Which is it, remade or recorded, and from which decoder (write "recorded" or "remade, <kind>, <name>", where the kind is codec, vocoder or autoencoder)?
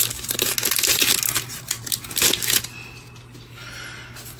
recorded